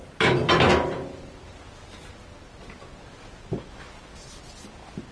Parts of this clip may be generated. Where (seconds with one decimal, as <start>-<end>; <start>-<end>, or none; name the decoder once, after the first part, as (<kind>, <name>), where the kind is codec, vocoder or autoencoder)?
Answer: none